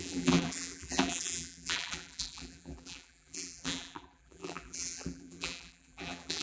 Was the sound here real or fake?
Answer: fake